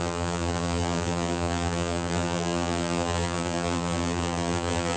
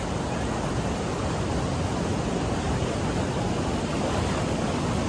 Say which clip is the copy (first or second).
first